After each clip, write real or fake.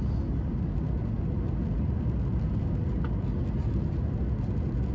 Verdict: real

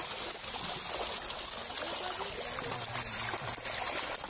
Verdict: real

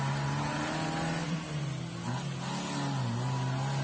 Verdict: real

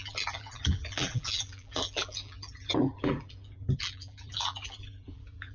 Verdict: fake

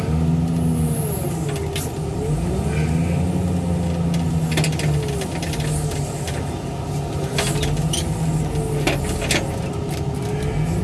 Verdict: real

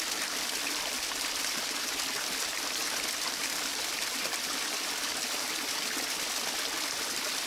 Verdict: real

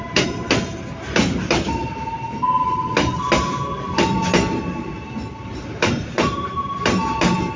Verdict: real